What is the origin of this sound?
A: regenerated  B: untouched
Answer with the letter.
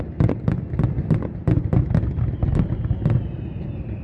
B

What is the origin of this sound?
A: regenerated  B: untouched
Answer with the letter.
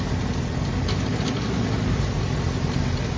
B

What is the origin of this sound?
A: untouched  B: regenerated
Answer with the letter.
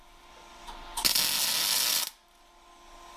A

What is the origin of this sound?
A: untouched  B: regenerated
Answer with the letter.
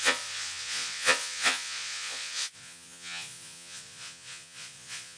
B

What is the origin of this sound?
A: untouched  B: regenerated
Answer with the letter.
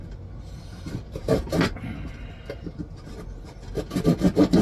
A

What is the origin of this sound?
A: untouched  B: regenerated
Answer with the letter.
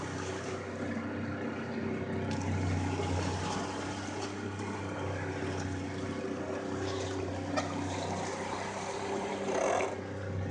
A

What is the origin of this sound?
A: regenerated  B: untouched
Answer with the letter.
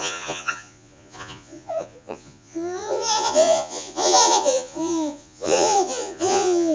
A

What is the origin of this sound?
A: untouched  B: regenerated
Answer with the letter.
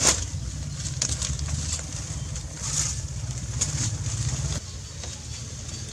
A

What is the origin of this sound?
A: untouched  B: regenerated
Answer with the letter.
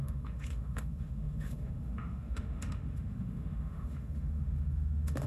B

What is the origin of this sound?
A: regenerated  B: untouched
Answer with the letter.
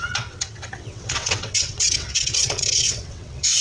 A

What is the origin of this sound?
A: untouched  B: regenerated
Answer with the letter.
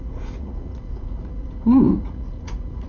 B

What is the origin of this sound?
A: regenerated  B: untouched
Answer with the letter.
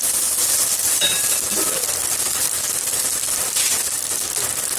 A